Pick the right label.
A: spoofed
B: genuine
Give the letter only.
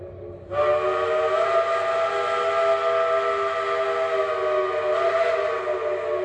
B